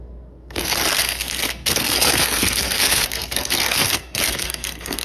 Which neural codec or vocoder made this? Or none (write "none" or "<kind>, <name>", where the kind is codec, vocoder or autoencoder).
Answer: codec, SNAC